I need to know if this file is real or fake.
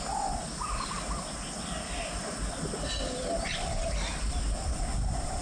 real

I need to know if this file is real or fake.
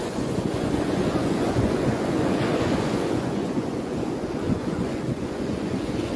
fake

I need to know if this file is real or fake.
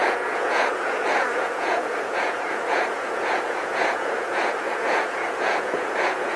fake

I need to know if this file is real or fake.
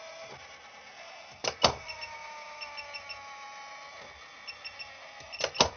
real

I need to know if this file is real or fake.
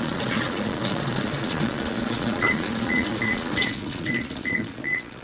fake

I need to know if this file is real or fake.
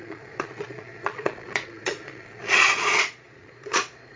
fake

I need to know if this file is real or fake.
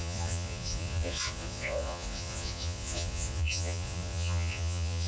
fake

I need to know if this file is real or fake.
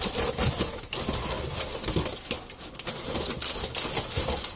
real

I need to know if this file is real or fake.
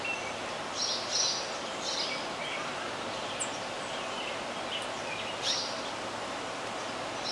real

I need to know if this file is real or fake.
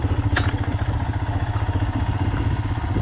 real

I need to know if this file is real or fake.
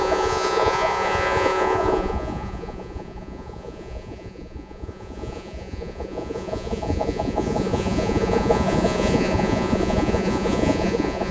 fake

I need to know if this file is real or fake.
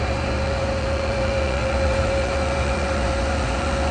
fake